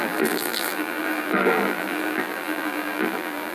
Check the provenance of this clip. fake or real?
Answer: fake